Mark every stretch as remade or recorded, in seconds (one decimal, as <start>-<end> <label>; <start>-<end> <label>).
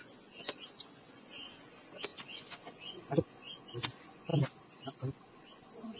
0.0-4.3 remade; 4.3-5.1 recorded; 5.1-6.0 remade